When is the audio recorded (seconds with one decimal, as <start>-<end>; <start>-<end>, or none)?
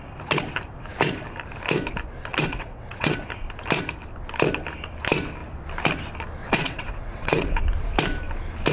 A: 0.0-2.3; 3.2-6.4; 7.6-8.7